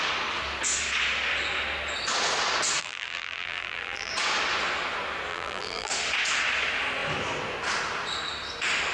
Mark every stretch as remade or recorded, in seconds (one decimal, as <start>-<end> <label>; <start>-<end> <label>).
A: 0.0-2.8 recorded; 2.8-4.1 remade; 4.1-5.3 recorded; 5.3-5.9 remade; 5.9-8.9 recorded

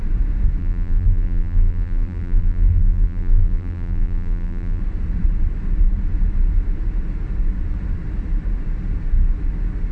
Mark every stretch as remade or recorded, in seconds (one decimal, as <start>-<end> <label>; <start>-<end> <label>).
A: 0.0-0.6 recorded; 0.6-4.8 remade; 4.8-9.9 recorded

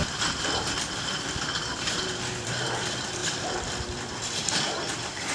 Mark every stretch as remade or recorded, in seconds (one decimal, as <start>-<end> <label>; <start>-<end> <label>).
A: 0.0-3.2 remade; 3.2-4.2 recorded; 4.2-5.3 remade

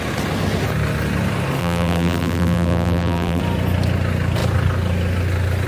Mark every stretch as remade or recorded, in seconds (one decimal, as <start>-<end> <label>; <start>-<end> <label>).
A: 0.0-1.6 recorded; 1.6-3.4 remade; 3.4-5.7 recorded

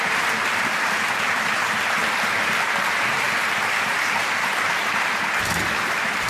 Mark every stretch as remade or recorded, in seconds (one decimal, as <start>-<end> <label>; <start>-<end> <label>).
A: 0.0-4.2 remade; 4.2-5.6 recorded; 5.6-6.3 remade

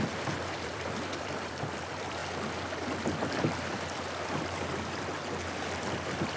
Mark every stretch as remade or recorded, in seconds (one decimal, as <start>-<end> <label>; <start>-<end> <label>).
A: 0.0-2.2 remade; 2.2-4.3 recorded; 4.3-6.4 remade